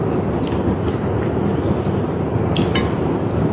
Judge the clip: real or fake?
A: real